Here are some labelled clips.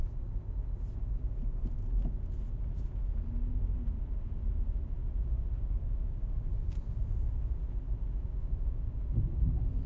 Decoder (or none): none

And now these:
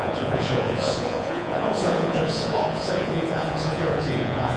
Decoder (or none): vocoder, Vocos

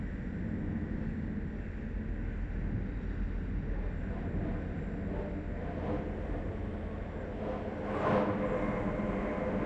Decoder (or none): none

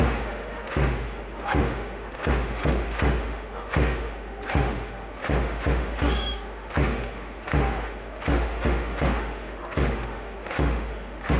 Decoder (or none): autoencoder, DAC-VAE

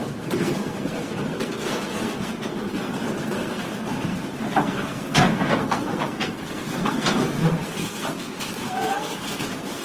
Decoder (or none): codec, SNAC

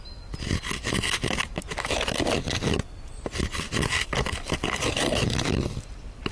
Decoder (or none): none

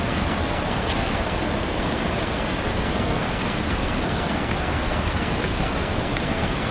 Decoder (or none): codec, SNAC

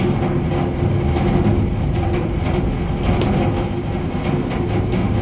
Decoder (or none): none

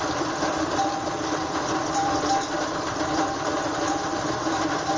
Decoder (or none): vocoder, BigVGAN v2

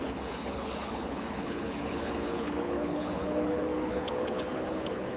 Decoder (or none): codec, HILCodec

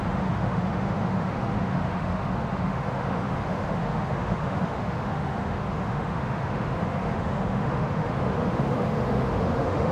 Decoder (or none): autoencoder, DAC-VAE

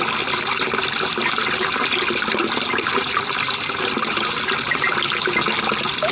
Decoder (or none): none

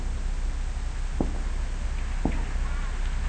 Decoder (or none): none